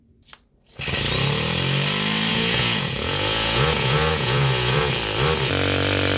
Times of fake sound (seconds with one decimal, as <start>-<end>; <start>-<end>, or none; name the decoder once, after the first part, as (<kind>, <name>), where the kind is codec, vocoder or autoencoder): 2.3-4.9 (vocoder, Vocos)